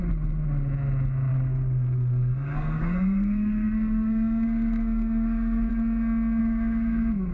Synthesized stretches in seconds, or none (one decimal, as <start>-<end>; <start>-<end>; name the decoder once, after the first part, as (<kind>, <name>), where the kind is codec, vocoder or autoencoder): 1.3-5.7 (codec, SNAC); 6.4-7.3